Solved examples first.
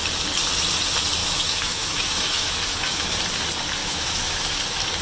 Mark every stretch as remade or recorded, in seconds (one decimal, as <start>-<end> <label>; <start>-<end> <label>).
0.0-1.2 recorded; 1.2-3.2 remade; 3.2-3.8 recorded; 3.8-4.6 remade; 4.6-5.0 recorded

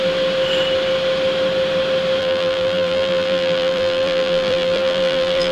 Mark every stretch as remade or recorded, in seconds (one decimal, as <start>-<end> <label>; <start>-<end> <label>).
0.0-2.2 recorded; 2.2-5.5 remade

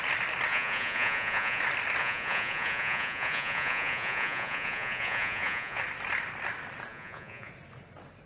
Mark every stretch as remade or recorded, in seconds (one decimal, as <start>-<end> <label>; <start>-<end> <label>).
0.0-0.5 recorded; 0.5-1.6 remade; 1.6-2.0 recorded; 2.0-5.8 remade; 5.8-6.9 recorded; 6.9-7.5 remade; 7.5-8.3 recorded

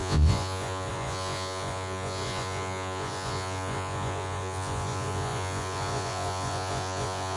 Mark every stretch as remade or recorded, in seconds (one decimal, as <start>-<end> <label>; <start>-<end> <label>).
0.0-7.4 remade